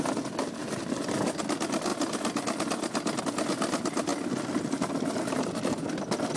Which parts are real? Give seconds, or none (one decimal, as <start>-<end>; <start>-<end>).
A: 0.0-0.6; 1.4-6.4